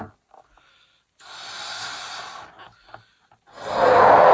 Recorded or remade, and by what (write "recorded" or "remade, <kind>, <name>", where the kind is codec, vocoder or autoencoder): recorded